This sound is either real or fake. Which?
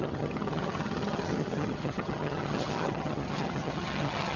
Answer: fake